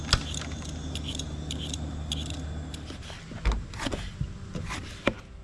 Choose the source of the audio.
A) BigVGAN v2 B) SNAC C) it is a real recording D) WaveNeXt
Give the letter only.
C